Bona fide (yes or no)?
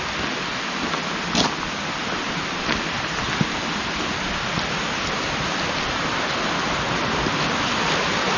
yes